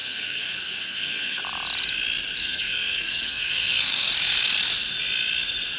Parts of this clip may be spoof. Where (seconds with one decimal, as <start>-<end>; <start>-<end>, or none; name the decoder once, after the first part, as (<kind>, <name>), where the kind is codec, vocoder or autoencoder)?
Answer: 0.0-1.4 (codec, SNAC); 2.4-4.1